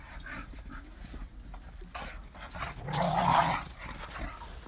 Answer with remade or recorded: recorded